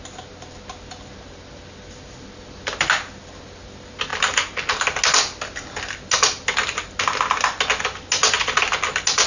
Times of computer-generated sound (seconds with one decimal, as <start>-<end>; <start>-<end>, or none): none